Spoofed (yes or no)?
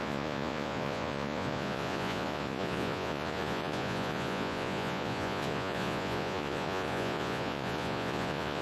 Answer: yes